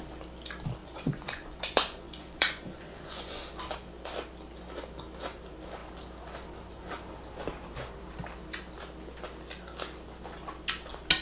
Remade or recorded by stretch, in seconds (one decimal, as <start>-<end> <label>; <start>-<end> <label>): 0.0-0.8 recorded; 0.8-3.5 remade; 3.5-11.2 recorded